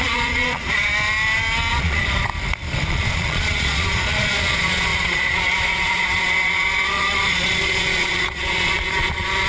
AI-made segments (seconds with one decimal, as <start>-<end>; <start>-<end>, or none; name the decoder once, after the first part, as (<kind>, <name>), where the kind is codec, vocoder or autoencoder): 0.0-0.9 (vocoder, Vocos); 1.7-2.3; 2.9-9.5